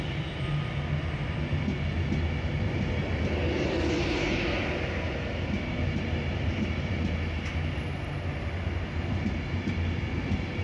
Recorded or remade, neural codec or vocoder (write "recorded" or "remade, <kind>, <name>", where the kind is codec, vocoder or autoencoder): recorded